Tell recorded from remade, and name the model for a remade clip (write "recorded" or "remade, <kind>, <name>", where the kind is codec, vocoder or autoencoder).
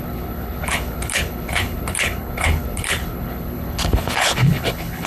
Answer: remade, codec, HILCodec